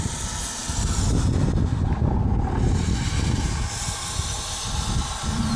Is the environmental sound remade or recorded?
recorded